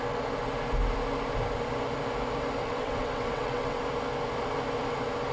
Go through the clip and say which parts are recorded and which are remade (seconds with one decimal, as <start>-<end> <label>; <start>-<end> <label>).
0.0-2.6 recorded; 2.6-3.8 remade; 3.8-5.3 recorded